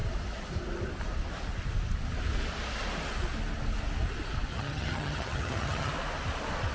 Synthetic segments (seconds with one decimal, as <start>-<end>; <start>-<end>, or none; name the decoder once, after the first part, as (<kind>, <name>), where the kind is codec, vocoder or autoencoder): 4.5-5.9 (vocoder, HiFi-GAN)